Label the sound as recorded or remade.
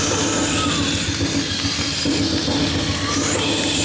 recorded